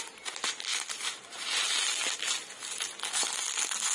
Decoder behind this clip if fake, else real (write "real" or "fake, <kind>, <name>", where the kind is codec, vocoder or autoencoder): real